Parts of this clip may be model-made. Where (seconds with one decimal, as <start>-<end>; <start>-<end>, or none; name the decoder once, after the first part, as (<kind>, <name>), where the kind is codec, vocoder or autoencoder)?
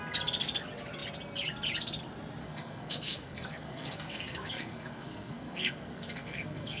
2.4-6.8 (codec, SNAC)